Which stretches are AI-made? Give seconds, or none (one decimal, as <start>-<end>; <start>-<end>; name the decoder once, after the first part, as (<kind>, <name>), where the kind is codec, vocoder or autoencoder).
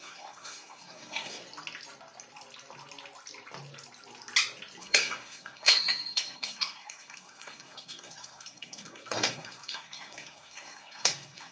0.0-1.4 (codec, SNAC); 4.8-11.5